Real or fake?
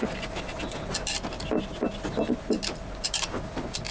real